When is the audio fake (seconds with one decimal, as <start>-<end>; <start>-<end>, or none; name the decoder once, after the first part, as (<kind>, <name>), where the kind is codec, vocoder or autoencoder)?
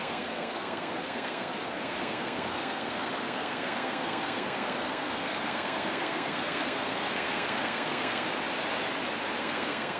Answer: 0.0-8.3 (codec, SNAC); 9.4-10.0